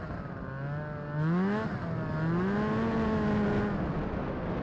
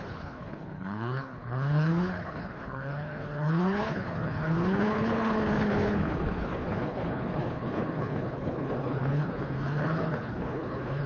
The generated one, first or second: second